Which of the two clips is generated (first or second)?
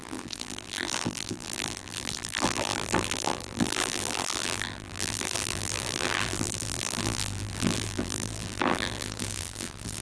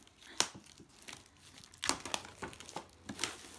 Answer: first